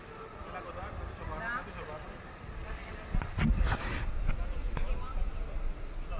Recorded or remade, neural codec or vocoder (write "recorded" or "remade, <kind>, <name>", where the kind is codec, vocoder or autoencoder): recorded